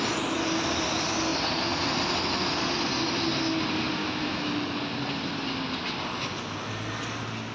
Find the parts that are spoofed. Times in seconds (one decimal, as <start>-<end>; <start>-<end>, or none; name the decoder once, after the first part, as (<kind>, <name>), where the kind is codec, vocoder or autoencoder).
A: 4.0-4.8 (autoencoder, DAC-VAE)